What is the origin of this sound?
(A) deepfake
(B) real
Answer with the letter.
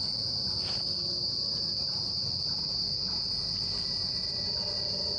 B